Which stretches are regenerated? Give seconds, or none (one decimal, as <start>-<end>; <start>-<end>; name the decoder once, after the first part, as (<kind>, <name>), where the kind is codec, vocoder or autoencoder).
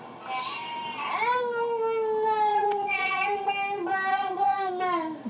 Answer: 2.5-3.5 (vocoder, Vocos); 4.1-4.7